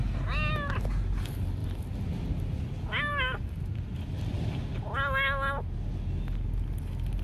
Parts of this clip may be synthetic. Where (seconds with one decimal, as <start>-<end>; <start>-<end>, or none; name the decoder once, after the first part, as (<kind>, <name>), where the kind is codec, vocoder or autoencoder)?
none